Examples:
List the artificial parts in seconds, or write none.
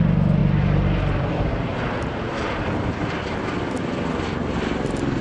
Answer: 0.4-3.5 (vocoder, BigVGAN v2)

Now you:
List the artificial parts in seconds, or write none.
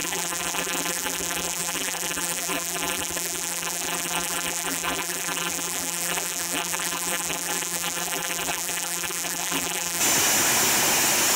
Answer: 0.0-10.0 (vocoder, BigVGAN v2)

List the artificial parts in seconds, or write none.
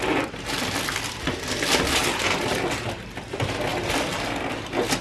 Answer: none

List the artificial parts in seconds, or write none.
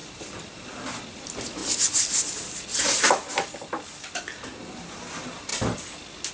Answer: none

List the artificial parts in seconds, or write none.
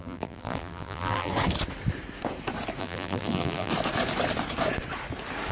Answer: 0.0-1.3 (vocoder, BigVGAN v2); 2.8-3.7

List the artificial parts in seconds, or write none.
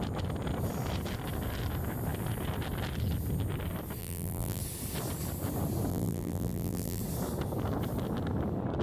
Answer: 4.0-4.6 (vocoder, BigVGAN v2); 5.9-7.0